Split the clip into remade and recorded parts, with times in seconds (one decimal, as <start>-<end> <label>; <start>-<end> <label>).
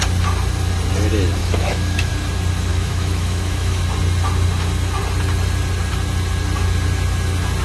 0.0-1.4 recorded; 1.4-2.1 remade; 2.1-2.7 recorded; 2.7-3.8 remade; 3.8-7.6 recorded